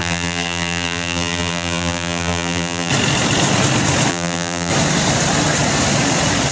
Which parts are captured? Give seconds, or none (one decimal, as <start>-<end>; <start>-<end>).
2.9-4.1; 4.7-6.5